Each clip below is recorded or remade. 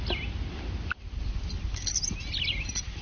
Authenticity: recorded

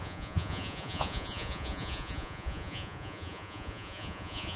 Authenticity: remade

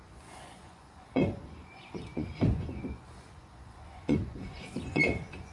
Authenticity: remade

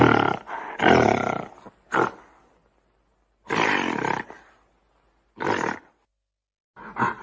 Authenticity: recorded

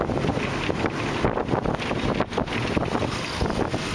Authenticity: recorded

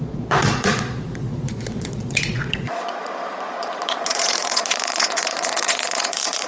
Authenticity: remade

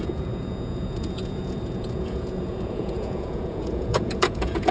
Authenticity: remade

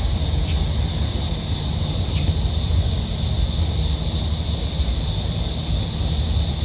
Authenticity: recorded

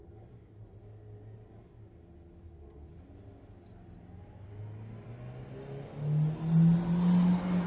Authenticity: recorded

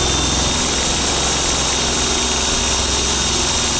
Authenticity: recorded